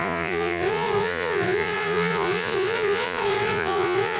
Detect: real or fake fake